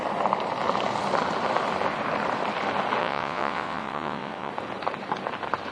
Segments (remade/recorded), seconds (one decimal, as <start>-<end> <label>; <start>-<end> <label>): 0.0-3.0 recorded; 3.0-4.5 remade; 4.5-5.7 recorded